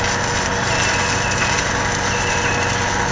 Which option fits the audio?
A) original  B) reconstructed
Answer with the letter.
A